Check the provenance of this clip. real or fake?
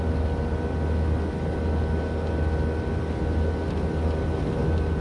real